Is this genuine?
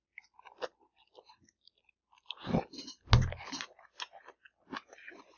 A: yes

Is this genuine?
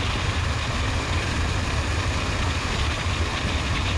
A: no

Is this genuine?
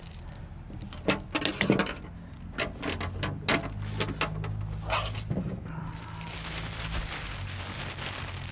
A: yes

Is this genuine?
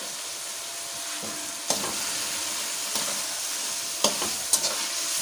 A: no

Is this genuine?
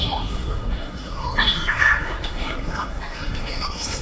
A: no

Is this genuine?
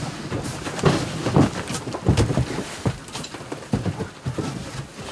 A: yes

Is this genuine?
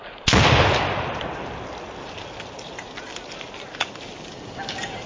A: yes